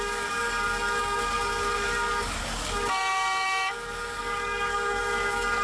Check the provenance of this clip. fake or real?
fake